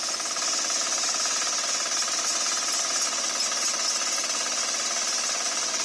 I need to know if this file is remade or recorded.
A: recorded